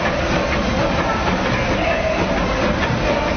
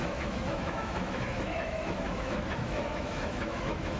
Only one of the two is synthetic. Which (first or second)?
second